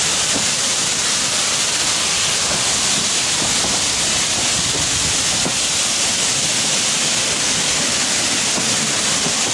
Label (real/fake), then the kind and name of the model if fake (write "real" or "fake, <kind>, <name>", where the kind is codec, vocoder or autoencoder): real